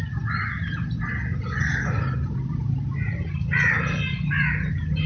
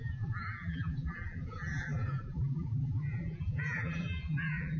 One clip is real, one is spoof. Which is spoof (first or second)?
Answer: second